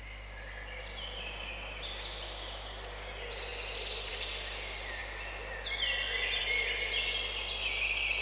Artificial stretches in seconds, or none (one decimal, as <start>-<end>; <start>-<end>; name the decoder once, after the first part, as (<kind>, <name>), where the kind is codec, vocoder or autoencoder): none